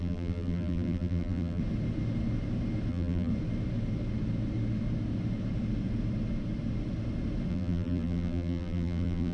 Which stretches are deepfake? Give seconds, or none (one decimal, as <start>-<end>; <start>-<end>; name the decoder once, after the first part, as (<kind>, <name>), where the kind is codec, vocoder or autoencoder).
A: 0.0-1.6 (vocoder, BigVGAN v2); 2.9-3.3; 7.5-9.3